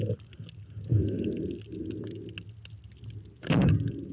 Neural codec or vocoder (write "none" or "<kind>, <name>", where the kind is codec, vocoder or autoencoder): none